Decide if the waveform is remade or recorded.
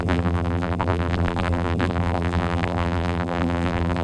remade